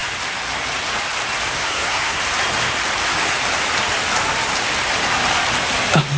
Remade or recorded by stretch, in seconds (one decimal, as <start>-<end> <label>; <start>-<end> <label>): 0.0-1.6 recorded; 1.6-2.2 remade; 2.2-6.2 recorded